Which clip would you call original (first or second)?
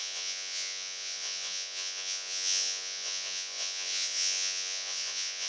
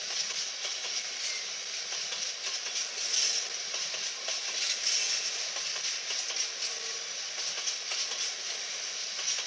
second